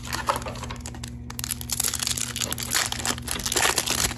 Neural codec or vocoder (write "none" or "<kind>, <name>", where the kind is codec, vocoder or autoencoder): none